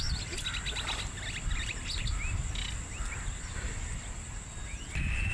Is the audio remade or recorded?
recorded